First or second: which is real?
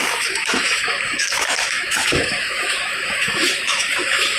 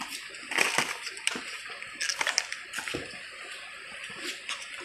second